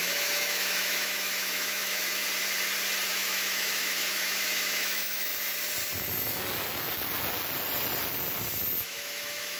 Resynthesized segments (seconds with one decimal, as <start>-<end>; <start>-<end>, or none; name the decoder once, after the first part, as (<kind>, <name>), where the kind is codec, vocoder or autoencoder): 0.0-2.2 (autoencoder, DAC-VAE); 3.1-5.3; 8.8-9.6